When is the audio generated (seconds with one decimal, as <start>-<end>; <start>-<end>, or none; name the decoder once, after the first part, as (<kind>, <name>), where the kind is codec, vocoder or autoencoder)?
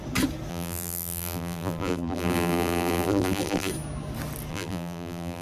0.5-3.7 (vocoder, BigVGAN v2); 4.5-5.4